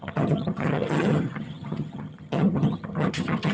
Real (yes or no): no